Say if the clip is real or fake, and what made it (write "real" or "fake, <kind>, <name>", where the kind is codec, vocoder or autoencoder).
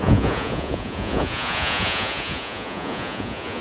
fake, vocoder, Vocos